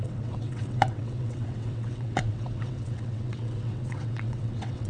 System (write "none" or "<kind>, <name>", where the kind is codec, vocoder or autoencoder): vocoder, WaveNeXt